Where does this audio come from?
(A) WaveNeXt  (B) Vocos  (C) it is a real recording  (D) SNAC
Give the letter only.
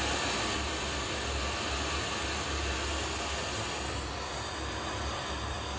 C